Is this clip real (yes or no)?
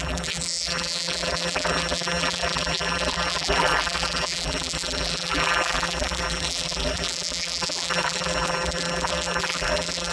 no